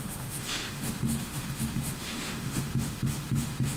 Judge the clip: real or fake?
fake